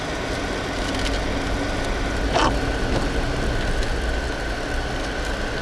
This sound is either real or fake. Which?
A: real